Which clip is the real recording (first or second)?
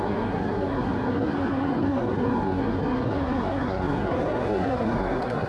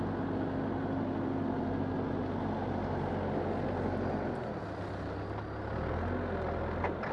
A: second